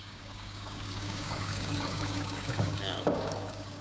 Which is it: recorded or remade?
remade